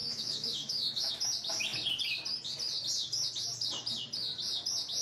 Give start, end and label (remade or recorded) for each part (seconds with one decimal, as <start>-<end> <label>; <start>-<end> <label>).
0.0-1.1 remade; 1.1-5.0 recorded